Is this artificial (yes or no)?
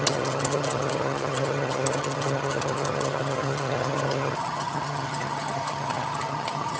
yes